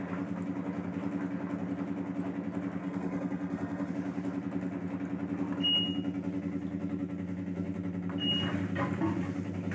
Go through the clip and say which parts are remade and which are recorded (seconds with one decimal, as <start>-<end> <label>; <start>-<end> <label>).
0.0-2.8 recorded; 2.8-3.9 remade; 3.9-9.7 recorded